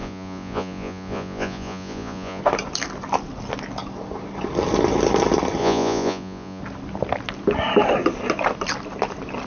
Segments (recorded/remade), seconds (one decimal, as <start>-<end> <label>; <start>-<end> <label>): 0.0-2.4 remade; 2.4-5.6 recorded; 5.6-6.6 remade; 6.6-9.5 recorded